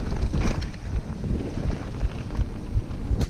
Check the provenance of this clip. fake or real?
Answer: real